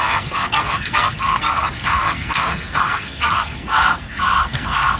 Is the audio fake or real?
fake